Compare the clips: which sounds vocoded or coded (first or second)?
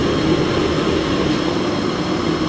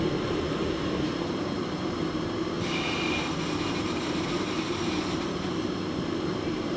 second